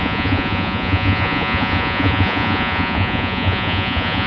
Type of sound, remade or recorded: remade